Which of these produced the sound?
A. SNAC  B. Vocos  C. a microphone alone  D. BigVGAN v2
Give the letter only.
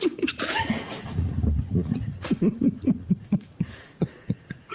B